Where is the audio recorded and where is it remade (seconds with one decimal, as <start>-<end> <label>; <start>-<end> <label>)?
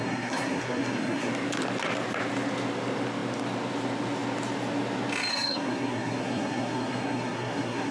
0.0-1.3 remade; 1.3-5.3 recorded; 5.3-7.9 remade